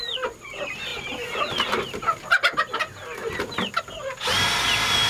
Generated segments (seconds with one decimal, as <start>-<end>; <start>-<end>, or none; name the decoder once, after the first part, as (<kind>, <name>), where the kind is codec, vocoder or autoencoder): none